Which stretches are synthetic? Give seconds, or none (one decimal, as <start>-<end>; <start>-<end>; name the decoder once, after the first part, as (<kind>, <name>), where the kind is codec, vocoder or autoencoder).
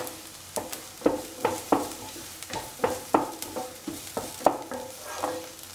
1.4-4.1 (vocoder, BigVGAN v2)